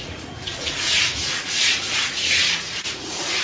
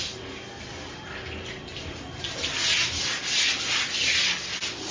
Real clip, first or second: second